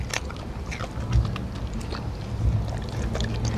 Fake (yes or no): no